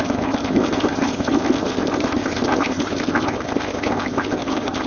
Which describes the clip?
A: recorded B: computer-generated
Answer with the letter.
B